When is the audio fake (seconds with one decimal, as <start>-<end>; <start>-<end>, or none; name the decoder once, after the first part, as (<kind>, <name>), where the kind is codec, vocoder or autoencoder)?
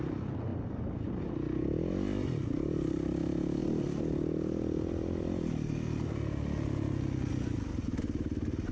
none